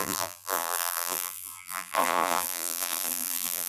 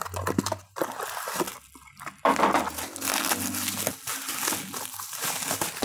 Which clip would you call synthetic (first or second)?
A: first